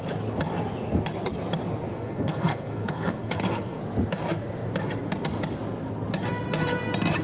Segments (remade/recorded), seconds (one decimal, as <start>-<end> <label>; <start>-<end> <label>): 0.0-1.9 recorded; 1.9-3.8 remade; 3.8-7.2 recorded